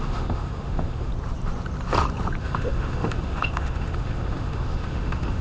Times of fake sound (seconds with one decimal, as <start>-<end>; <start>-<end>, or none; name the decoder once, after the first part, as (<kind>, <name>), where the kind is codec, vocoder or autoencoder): 0.0-1.1 (autoencoder, DAC-VAE); 2.4-5.4